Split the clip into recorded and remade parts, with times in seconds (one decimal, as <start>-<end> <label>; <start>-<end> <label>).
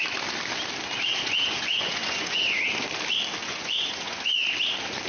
0.0-1.1 recorded; 1.1-2.6 remade; 2.6-3.4 recorded; 3.4-4.3 remade; 4.3-5.1 recorded